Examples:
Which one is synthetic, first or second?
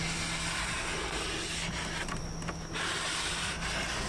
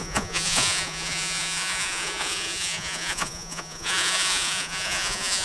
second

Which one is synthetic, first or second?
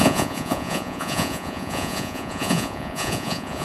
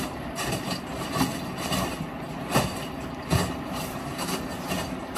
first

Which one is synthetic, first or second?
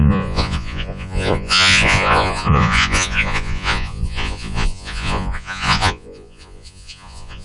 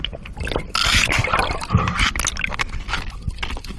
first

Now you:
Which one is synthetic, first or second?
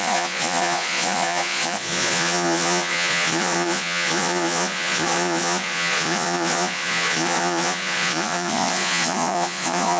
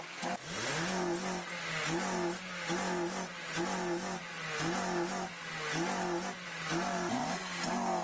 first